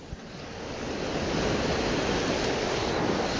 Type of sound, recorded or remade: recorded